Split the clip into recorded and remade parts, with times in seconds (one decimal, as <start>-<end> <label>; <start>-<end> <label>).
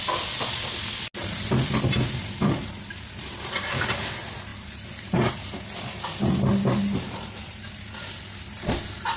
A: 0.0-9.2 recorded